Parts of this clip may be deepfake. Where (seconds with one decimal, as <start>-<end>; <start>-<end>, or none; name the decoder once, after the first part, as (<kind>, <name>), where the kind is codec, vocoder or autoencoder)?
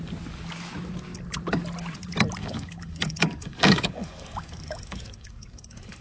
2.4-6.0 (codec, DAC)